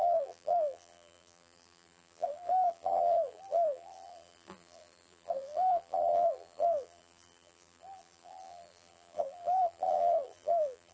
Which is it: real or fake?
fake